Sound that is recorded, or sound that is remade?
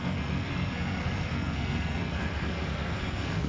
remade